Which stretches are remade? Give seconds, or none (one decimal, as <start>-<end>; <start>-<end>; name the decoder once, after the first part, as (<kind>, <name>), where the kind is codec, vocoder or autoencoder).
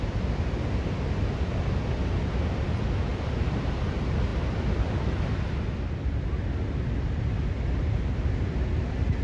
3.1-3.9 (vocoder, BigVGAN v2)